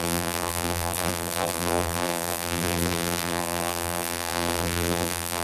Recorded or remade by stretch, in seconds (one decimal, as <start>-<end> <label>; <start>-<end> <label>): 0.0-5.4 remade